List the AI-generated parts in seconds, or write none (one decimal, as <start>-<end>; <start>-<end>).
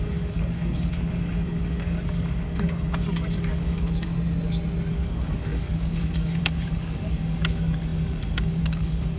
0.0-4.1; 4.9-9.2